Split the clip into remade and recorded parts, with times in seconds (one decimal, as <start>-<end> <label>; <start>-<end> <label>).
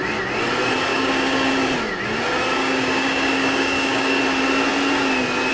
0.0-0.9 recorded; 0.9-1.5 remade; 1.5-2.6 recorded; 2.6-4.2 remade; 4.2-5.5 recorded